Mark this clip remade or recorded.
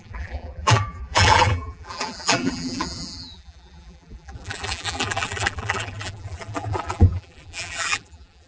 remade